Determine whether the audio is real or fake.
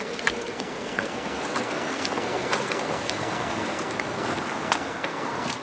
fake